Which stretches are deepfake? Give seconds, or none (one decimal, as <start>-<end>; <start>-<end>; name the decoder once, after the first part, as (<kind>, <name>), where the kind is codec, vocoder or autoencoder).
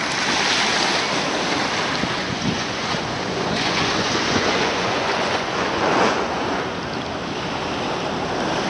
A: 2.2-6.6 (vocoder, Vocos)